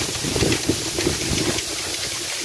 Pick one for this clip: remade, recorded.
recorded